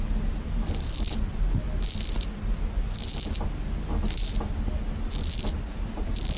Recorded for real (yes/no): yes